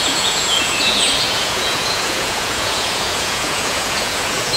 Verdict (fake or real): fake